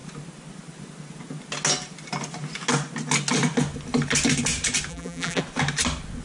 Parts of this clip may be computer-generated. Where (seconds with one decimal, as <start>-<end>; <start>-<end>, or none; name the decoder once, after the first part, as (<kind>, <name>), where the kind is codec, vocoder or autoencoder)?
4.9-5.4 (vocoder, BigVGAN v2)